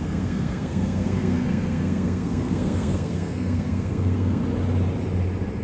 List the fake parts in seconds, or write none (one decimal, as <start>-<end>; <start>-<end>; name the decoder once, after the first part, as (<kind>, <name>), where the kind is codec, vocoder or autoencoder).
0.0-4.4 (codec, SNAC)